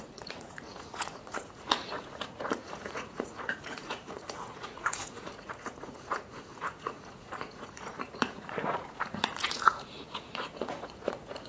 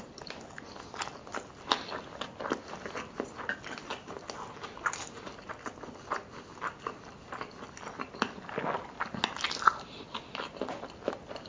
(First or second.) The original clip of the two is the second